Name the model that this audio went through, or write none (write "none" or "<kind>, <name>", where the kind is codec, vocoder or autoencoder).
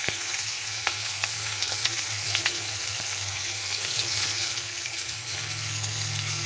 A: codec, SNAC